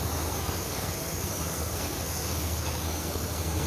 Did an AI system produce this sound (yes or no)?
yes